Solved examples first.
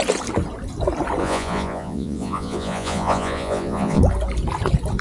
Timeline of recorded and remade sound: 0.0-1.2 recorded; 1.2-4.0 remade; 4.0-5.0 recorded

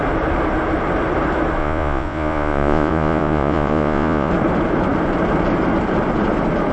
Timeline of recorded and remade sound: 0.0-1.6 recorded; 1.6-4.3 remade; 4.3-6.7 recorded

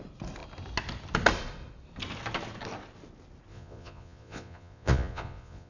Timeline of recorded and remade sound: 0.0-3.5 recorded; 3.5-5.7 remade

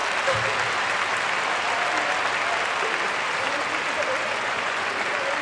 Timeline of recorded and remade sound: 0.0-4.2 recorded; 4.2-5.0 remade; 5.0-5.4 recorded

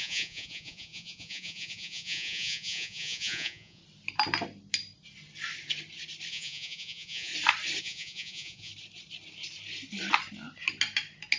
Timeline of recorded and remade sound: 0.0-3.8 remade; 3.8-6.3 recorded; 6.3-7.3 remade; 7.3-7.8 recorded; 7.8-8.7 remade; 8.7-11.4 recorded